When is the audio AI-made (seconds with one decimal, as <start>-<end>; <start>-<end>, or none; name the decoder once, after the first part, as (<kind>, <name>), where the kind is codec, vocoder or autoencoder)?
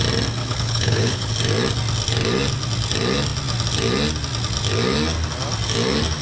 0.4-1.3 (codec, HILCodec)